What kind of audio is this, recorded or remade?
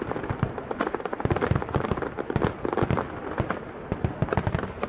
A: recorded